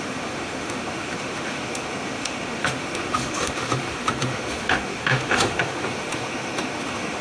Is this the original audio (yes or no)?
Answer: no